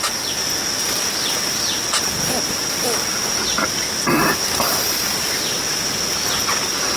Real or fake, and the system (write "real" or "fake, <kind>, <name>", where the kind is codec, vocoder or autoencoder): real